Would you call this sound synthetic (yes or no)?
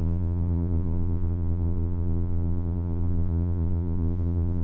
yes